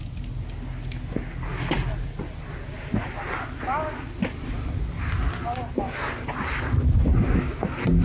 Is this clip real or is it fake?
real